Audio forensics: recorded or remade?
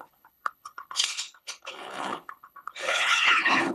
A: remade